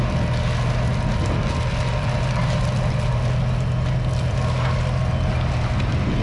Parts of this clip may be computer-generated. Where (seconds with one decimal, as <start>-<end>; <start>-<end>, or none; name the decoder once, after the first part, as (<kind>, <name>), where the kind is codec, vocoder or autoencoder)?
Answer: none